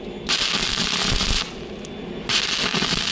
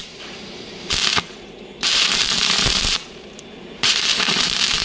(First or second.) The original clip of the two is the first